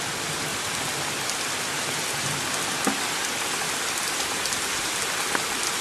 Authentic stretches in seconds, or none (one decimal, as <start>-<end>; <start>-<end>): 0.0-5.8